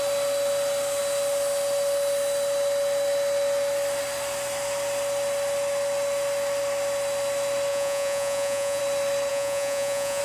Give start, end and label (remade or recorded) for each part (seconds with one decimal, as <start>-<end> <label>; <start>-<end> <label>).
0.0-7.7 recorded; 7.7-8.8 remade; 8.8-9.3 recorded; 9.3-10.2 remade